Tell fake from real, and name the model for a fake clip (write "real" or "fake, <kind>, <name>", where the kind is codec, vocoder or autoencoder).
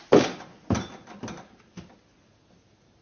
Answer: real